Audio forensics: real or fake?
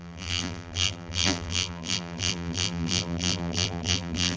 fake